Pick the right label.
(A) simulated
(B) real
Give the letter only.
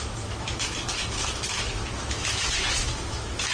A